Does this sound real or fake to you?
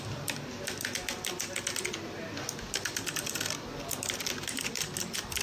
real